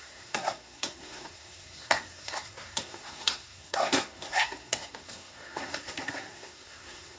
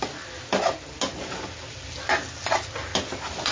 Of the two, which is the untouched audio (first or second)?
second